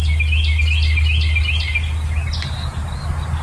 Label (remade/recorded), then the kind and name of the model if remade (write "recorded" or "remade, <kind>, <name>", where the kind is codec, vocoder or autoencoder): recorded